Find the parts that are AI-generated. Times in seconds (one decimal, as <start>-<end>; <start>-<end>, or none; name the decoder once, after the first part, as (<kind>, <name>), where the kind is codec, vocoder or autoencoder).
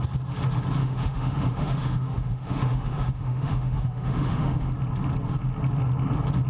0.8-4.7 (autoencoder, DAC-VAE)